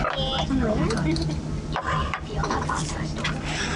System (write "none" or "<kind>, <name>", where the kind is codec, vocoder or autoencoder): none